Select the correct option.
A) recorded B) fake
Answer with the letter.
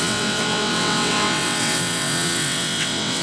B